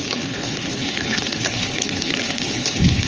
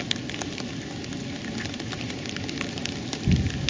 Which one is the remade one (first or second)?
first